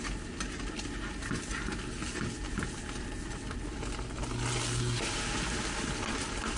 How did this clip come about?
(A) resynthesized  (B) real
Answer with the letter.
B